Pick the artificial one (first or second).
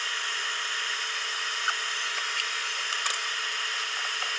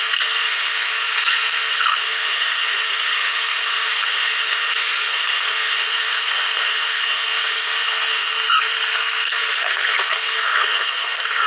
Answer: second